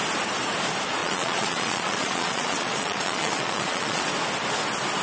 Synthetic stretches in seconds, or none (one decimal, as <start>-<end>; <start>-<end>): 1.0-4.0